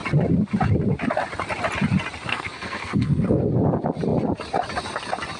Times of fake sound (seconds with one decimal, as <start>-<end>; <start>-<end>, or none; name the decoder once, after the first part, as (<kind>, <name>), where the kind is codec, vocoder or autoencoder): 2.3-3.5 (codec, SNAC)